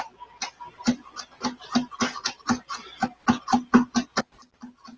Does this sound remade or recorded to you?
recorded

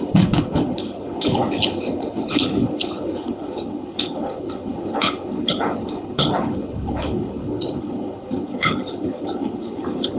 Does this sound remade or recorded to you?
remade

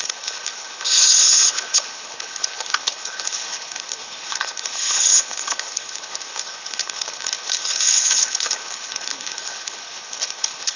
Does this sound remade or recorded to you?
remade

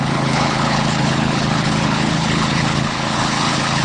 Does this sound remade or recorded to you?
remade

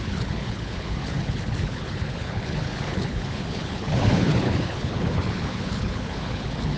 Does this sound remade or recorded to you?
remade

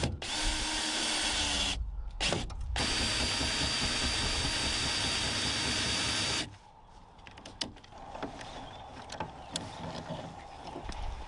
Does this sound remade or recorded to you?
recorded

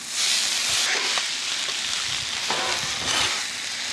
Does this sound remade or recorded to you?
recorded